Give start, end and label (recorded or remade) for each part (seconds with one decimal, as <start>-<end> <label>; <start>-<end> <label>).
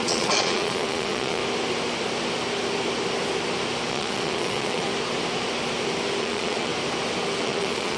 0.0-1.4 remade; 1.4-3.9 recorded; 3.9-4.9 remade; 4.9-6.2 recorded; 6.2-6.7 remade; 6.7-7.4 recorded; 7.4-8.0 remade